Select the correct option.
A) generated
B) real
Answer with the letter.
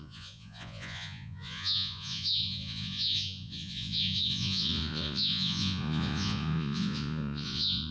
A